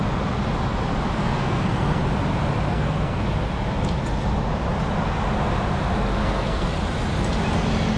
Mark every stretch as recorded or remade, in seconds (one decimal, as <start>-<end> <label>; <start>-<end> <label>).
0.0-1.2 recorded; 1.2-2.0 remade; 2.0-2.7 recorded; 2.7-3.2 remade; 3.2-6.2 recorded; 6.2-6.7 remade; 6.7-8.0 recorded

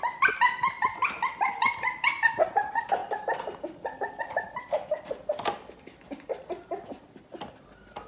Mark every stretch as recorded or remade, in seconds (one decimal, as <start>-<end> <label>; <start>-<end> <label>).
0.0-8.1 recorded

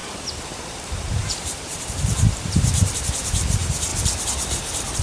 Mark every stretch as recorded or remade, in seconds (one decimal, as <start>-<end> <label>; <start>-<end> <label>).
0.0-3.0 remade; 3.0-5.0 recorded